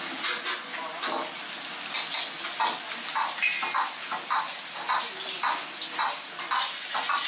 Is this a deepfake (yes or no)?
no